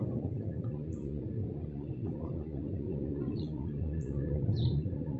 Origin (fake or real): fake